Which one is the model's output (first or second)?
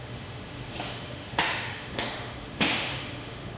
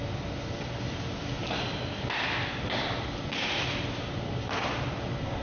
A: first